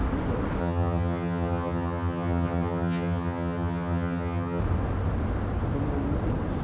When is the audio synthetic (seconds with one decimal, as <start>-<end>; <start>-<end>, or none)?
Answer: 0.6-4.6